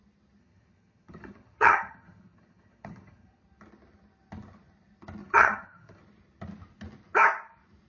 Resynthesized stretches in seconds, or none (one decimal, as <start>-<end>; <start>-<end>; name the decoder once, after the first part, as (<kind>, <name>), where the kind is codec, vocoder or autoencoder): 0.4-3.4 (vocoder, HiFi-GAN); 5.2-6.0